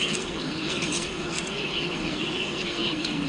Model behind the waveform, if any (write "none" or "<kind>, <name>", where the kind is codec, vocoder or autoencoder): codec, SNAC